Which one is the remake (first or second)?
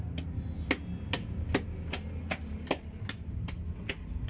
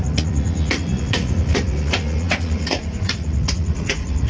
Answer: second